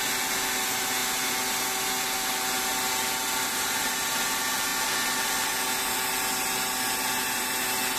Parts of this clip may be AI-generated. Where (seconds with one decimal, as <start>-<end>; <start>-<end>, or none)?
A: none